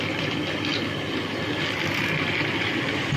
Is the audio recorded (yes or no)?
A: yes